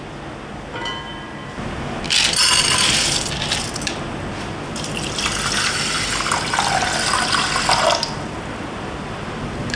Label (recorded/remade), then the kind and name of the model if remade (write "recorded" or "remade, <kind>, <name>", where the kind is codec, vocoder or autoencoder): recorded